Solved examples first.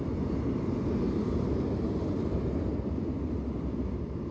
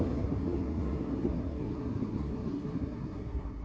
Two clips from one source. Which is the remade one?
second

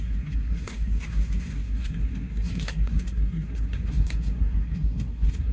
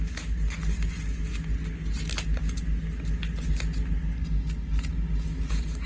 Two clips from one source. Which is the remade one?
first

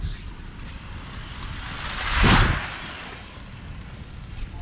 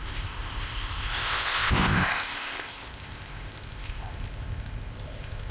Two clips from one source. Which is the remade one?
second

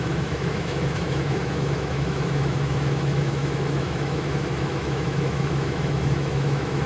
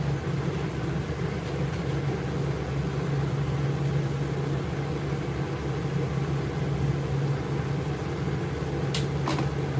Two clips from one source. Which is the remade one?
first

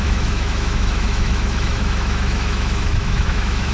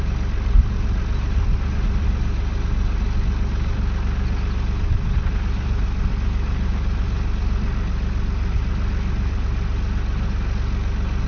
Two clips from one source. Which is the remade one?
first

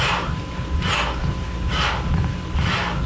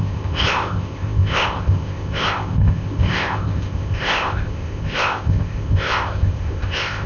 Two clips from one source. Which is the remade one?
second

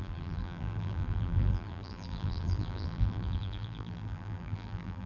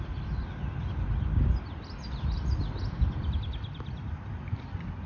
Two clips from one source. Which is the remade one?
first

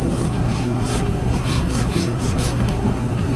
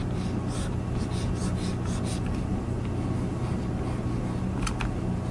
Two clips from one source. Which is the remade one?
first